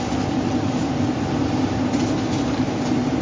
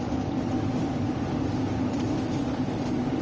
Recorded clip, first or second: first